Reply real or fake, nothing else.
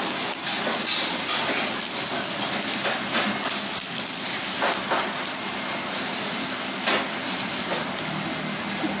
real